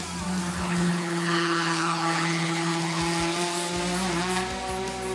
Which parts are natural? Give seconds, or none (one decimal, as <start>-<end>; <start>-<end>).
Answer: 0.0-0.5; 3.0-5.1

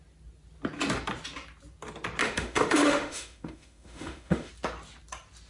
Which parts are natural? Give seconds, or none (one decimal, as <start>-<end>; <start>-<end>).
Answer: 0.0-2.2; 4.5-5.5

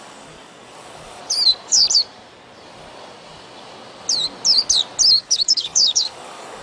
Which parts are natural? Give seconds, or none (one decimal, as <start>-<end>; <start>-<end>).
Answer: 1.2-5.2